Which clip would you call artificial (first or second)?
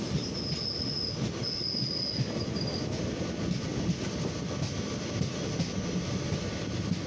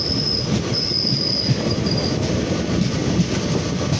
second